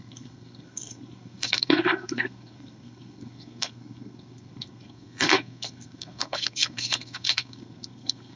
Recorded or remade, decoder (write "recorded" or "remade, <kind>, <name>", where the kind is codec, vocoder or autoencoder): remade, codec, SNAC